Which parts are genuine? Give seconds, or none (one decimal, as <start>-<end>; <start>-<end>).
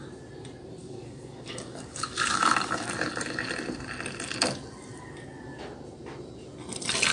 0.0-0.8; 2.9-7.1